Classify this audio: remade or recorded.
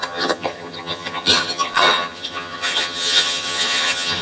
remade